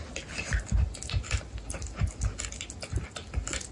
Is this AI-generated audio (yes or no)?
no